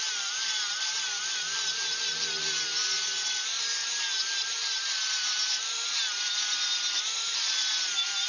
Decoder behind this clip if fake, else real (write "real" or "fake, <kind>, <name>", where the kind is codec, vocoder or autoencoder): real